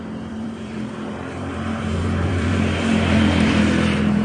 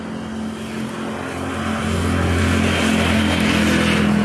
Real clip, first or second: second